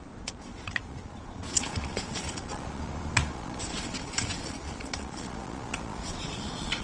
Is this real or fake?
fake